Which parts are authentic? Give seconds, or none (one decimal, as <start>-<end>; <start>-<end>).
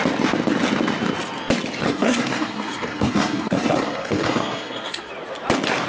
0.0-1.8; 5.1-5.9